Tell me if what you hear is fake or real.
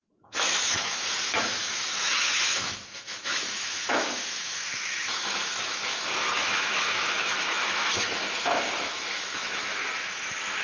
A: fake